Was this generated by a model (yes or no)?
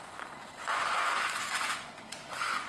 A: yes